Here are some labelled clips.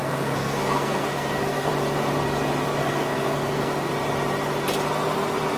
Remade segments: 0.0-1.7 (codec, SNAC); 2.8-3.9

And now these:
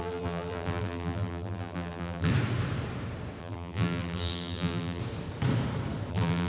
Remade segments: 0.0-2.3 (vocoder, BigVGAN v2); 3.4-5.0; 6.1-6.5

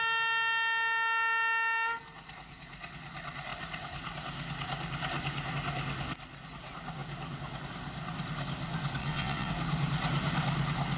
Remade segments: 9.0-9.5 (vocoder, WaveNeXt)

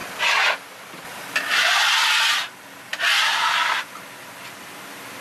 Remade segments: none

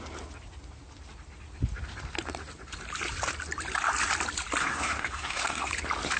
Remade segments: 4.6-5.7 (codec, SNAC)

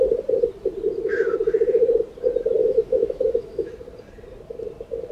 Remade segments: 2.6-3.7 (autoencoder, DAC-VAE)

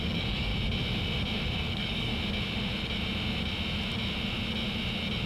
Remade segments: 0.0-0.5 (codec, DAC); 1.6-2.1

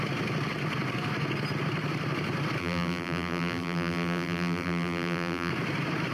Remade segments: 2.6-5.5 (vocoder, BigVGAN v2)